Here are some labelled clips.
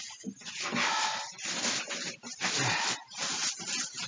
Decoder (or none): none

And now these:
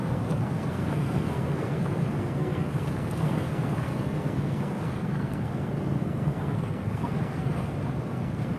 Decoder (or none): codec, SNAC